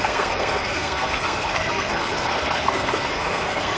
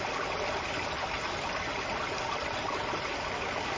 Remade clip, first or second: first